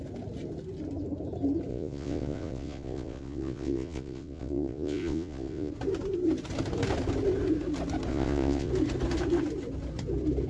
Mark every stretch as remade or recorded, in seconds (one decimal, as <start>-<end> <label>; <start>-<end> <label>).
0.0-1.7 recorded; 1.7-5.7 remade; 5.7-8.1 recorded; 8.1-8.7 remade; 8.7-10.5 recorded